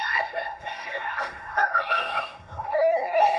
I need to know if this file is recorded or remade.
remade